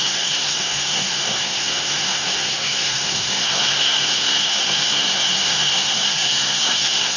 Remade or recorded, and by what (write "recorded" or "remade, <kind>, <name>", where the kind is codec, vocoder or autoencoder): remade, codec, SNAC